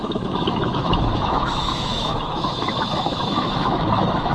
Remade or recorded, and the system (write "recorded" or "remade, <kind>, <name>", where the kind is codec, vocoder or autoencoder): remade, autoencoder, DAC-VAE